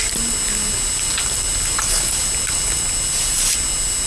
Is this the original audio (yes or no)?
yes